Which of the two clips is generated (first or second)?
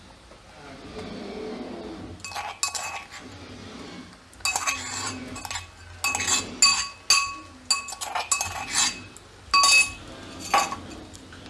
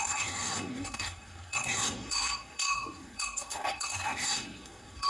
second